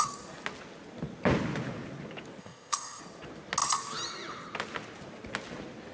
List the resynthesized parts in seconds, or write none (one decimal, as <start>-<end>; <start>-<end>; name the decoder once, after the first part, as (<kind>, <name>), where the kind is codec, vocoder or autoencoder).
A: 2.4-3.0 (codec, ZipCodec)